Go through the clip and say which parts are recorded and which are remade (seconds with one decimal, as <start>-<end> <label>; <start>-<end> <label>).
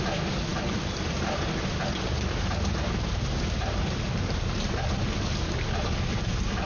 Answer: 0.0-6.6 recorded